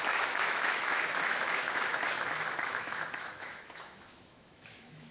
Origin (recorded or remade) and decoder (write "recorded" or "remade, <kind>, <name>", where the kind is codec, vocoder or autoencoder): remade, autoencoder, DAC-VAE